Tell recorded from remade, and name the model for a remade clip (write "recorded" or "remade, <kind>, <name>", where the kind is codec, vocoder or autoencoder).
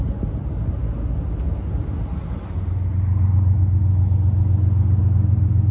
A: recorded